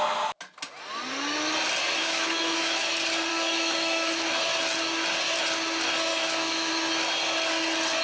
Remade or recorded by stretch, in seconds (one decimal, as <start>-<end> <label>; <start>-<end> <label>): 0.0-2.0 recorded; 2.0-2.9 remade; 2.9-3.3 recorded; 3.3-4.3 remade; 4.3-6.1 recorded; 6.1-6.7 remade; 6.7-8.0 recorded